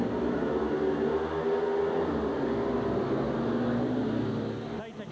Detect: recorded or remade recorded